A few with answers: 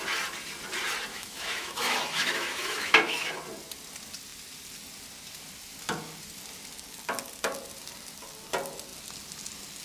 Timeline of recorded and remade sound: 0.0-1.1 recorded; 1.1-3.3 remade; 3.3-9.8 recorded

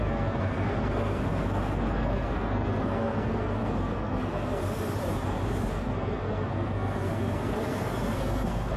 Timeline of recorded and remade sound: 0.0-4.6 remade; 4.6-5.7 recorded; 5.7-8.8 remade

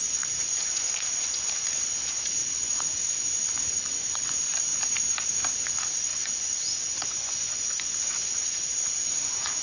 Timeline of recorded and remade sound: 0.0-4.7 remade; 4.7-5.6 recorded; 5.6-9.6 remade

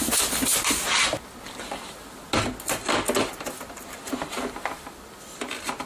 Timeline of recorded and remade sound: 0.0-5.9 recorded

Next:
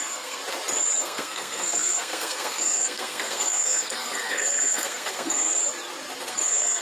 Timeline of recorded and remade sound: 0.0-0.4 remade; 0.4-1.0 recorded; 1.0-5.6 remade; 5.6-6.3 recorded; 6.3-6.8 remade

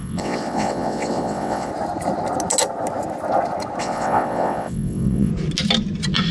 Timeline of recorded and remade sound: 0.0-1.7 remade; 1.7-3.8 recorded; 3.8-5.3 remade; 5.3-6.3 recorded

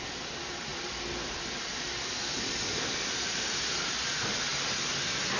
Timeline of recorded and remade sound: 0.0-0.7 recorded; 0.7-3.5 remade; 3.5-5.4 recorded

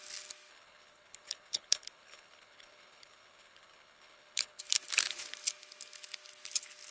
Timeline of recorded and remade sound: 0.0-0.5 recorded; 0.5-4.6 remade; 4.6-6.9 recorded